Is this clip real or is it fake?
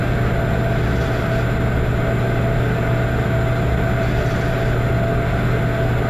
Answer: real